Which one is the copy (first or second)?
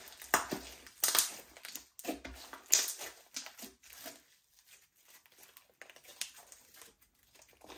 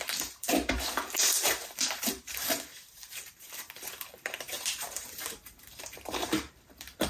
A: second